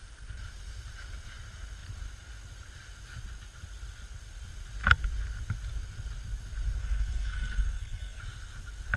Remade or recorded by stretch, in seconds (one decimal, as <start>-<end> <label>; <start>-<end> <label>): 0.0-6.8 recorded; 6.8-8.2 remade; 8.2-9.0 recorded